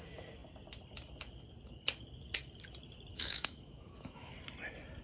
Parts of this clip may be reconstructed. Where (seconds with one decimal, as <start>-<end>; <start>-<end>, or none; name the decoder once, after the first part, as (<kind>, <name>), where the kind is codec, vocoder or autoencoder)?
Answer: 3.1-4.3 (autoencoder, DAC-VAE)